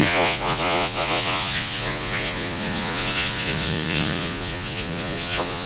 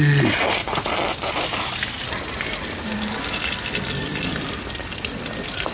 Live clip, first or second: second